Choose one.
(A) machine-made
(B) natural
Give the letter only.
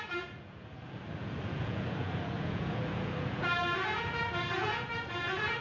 A